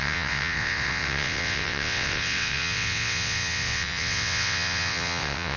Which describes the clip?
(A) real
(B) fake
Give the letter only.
B